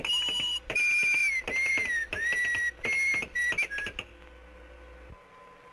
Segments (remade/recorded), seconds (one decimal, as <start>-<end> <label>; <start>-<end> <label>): 0.0-5.7 recorded